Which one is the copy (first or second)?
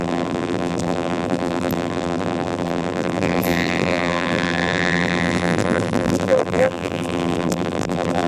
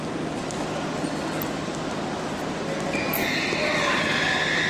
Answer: first